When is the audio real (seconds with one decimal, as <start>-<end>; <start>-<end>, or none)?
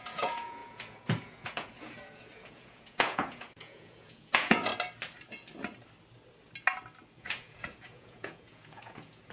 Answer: 4.7-7.2